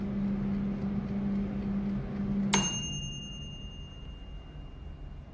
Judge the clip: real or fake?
real